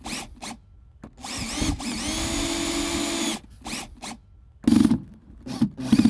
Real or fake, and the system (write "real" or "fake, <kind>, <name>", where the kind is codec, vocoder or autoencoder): real